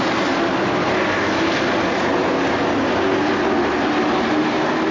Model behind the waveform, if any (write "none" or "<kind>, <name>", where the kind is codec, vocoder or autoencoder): none